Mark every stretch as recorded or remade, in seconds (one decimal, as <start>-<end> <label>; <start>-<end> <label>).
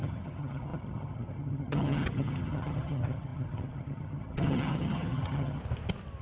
0.0-5.6 remade; 5.6-6.2 recorded